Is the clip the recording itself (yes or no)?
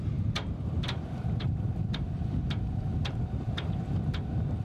yes